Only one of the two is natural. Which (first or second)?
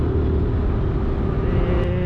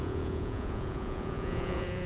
first